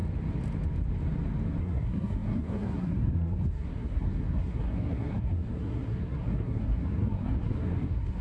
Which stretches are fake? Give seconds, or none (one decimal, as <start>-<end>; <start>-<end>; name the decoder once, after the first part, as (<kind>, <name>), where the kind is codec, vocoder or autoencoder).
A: 1.6-8.2 (codec, SNAC)

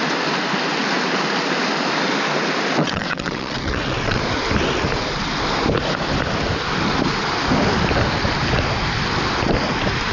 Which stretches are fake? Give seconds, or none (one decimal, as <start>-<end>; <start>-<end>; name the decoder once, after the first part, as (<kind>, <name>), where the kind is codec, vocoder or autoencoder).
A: 2.8-4.2 (vocoder, WaveNeXt)

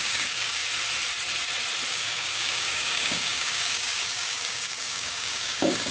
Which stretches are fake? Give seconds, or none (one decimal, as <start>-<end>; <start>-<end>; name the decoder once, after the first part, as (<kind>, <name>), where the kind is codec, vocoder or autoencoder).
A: 0.0-0.6 (codec, DAC); 1.9-5.9

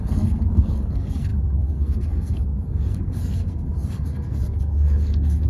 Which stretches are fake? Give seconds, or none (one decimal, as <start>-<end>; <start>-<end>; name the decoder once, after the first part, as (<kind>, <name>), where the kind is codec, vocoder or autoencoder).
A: 0.0-5.5 (codec, SNAC)

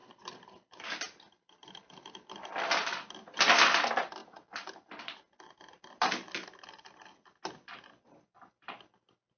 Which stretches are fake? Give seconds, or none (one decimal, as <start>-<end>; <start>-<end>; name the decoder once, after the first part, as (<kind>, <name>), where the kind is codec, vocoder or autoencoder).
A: 4.2-4.8 (vocoder, BigVGAN v2)

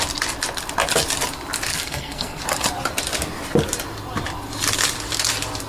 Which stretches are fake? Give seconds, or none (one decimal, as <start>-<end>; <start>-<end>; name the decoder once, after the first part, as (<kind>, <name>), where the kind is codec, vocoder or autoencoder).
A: 1.7-2.4 (codec, SNAC)